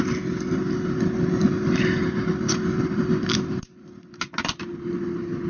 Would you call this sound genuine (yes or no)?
yes